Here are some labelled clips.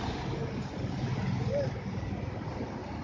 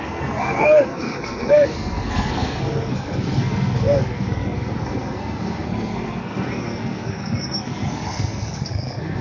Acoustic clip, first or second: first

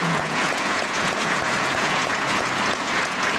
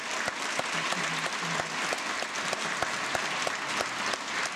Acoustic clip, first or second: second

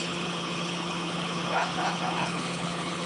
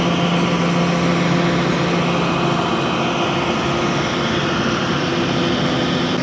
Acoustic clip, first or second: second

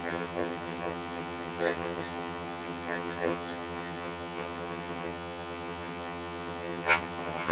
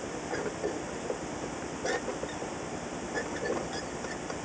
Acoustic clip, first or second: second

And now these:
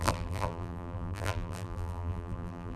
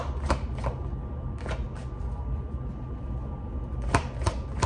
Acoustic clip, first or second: second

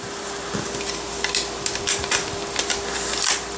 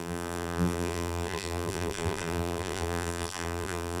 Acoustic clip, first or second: first